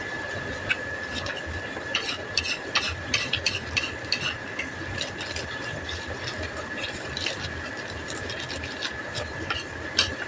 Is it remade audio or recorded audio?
remade